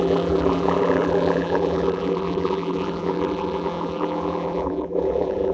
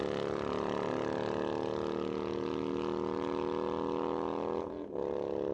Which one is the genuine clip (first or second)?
second